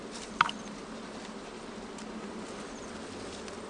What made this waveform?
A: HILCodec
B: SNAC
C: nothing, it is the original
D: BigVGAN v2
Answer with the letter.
C